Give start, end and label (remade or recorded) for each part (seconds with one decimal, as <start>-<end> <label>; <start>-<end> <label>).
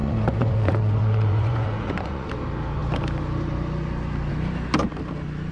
0.0-2.3 remade; 2.3-5.5 recorded